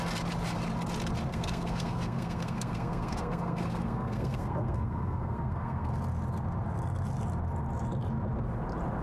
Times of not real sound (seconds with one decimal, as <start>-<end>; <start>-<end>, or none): 1.3-5.9